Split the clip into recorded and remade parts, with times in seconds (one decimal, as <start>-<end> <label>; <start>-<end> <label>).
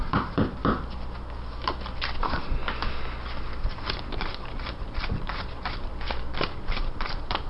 0.0-0.6 remade; 0.6-2.2 recorded; 2.2-2.6 remade; 2.6-3.6 recorded; 3.6-5.9 remade; 5.9-6.4 recorded; 6.4-7.5 remade